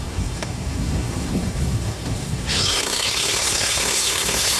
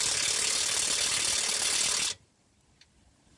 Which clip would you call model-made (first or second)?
first